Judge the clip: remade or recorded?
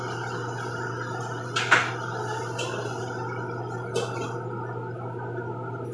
recorded